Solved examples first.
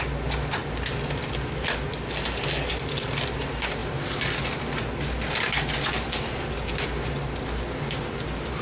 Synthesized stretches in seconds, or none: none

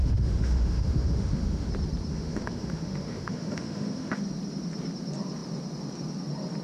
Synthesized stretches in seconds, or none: 0.0-1.7 (autoencoder, DAC-VAE); 2.1-4.2

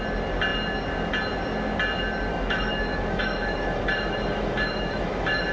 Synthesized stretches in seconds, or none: 2.3-5.5 (autoencoder, DAC-VAE)